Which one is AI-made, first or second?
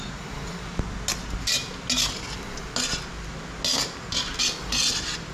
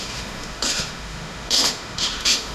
second